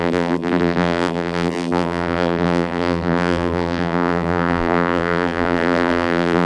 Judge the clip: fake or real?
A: fake